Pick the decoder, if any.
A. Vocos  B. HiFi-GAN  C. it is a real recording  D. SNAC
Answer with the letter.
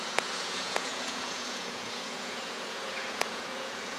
A